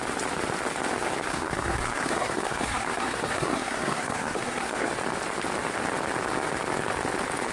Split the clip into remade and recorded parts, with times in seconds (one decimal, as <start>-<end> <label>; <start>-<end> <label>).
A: 0.0-1.3 recorded; 1.3-4.9 remade; 4.9-7.5 recorded